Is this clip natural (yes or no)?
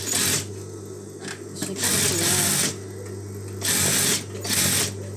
yes